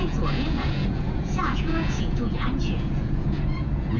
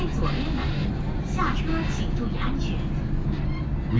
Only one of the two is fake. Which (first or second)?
first